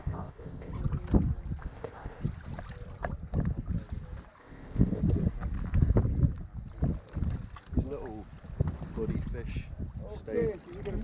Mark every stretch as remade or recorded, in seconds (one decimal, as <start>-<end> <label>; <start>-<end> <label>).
0.0-0.7 remade; 0.7-1.6 recorded; 1.6-2.2 remade; 2.2-4.4 recorded; 4.4-5.0 remade; 5.0-11.0 recorded